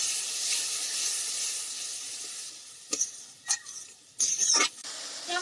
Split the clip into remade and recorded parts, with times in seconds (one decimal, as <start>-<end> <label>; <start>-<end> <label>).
0.0-3.2 remade; 3.2-5.4 recorded